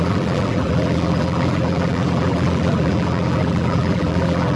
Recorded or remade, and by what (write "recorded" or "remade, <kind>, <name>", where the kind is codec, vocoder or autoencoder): remade, vocoder, BigVGAN v2